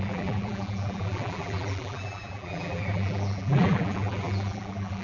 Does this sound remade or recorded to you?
remade